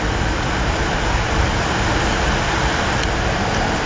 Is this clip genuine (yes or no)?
yes